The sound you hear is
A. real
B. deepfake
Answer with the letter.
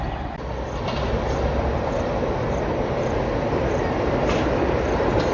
A